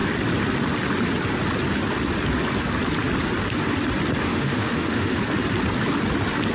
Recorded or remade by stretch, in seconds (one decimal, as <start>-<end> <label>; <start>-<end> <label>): 0.0-4.2 recorded; 4.2-5.2 remade; 5.2-6.5 recorded